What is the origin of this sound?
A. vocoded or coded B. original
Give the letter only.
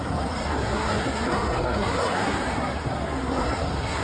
A